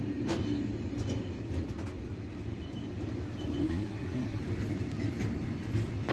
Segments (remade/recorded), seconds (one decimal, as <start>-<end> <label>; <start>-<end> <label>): 0.0-3.6 recorded; 3.6-4.4 remade; 4.4-6.1 recorded